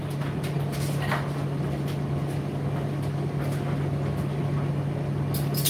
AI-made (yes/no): no